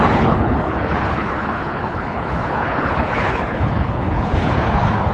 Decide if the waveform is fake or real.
fake